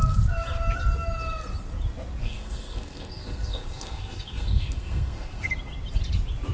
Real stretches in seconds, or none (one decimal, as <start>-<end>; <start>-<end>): 0.0-2.2; 5.5-6.5

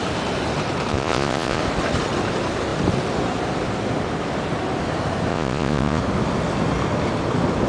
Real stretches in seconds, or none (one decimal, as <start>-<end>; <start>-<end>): 0.0-0.9; 1.6-5.3; 6.0-7.7

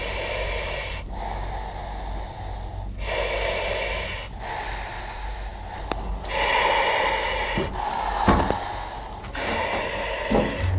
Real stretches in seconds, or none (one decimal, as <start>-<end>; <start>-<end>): 0.0-10.8

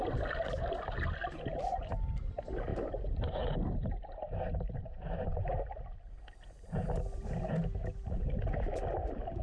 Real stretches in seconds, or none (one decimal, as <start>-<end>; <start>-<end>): 0.0-2.7; 5.6-9.4